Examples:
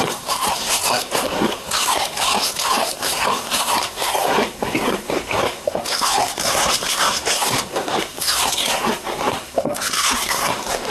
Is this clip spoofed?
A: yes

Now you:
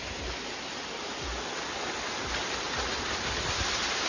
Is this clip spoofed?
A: no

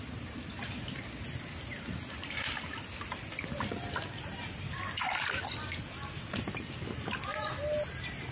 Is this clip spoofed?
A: no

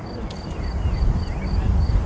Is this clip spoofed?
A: no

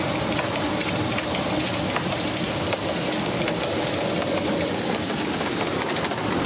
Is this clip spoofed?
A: no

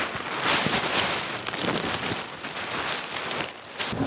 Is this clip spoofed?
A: no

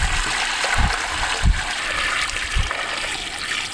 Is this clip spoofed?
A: no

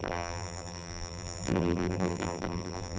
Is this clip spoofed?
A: yes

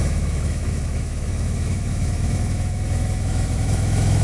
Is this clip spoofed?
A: yes